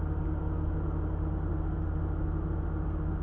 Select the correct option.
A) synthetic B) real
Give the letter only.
B